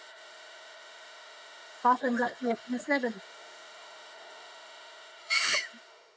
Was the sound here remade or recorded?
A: remade